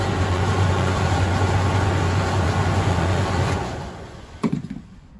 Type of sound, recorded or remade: remade